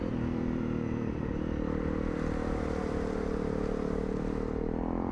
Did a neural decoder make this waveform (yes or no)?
yes